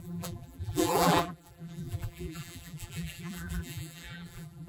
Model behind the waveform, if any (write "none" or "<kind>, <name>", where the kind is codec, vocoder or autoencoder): vocoder, BigVGAN v2